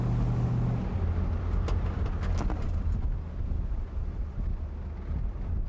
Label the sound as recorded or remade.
recorded